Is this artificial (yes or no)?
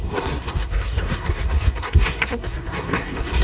yes